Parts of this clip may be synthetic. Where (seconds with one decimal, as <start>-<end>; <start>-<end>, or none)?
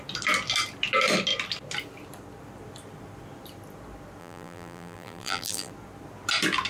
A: 4.2-5.7